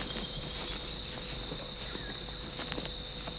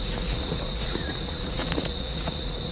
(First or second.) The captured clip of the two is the first